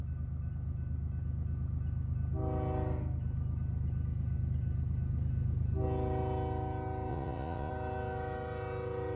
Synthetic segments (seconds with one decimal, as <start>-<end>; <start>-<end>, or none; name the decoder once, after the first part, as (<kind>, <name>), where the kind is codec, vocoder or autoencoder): 7.1-7.7 (vocoder, Vocos)

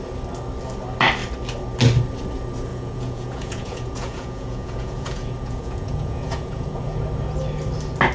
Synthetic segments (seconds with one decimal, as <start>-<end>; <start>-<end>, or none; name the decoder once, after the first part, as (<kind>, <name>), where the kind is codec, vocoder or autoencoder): 2.7-7.0 (vocoder, Vocos)